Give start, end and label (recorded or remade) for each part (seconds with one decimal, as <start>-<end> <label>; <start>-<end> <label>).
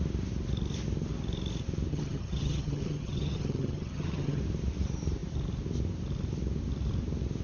0.0-1.9 recorded; 1.9-4.4 remade; 4.4-7.4 recorded